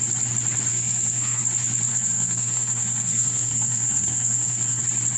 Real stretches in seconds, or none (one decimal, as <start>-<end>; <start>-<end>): 0.0-0.7; 1.4-1.9; 4.8-5.2